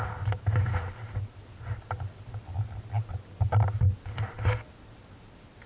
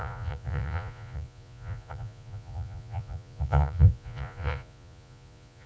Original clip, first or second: first